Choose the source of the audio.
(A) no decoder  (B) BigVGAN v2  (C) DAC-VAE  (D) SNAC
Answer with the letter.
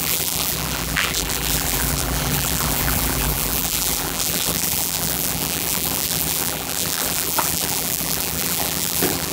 B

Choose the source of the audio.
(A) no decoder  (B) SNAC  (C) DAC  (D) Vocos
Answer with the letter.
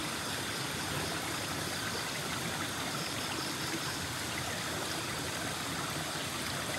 A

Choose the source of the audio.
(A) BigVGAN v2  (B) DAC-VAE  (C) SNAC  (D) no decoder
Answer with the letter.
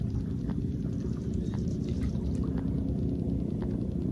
A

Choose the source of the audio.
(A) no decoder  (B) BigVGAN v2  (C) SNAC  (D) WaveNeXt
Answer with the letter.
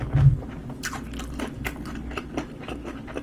A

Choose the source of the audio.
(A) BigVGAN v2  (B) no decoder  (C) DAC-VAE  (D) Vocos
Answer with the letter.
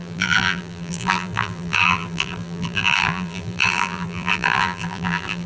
A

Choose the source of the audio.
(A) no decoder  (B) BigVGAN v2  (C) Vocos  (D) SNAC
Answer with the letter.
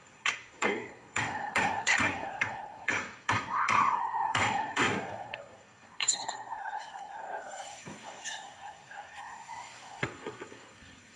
D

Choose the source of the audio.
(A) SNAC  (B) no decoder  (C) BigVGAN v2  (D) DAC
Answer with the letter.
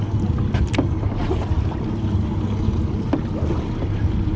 B